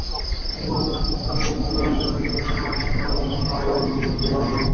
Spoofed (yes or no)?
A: no